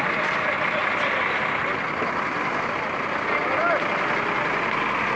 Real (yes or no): yes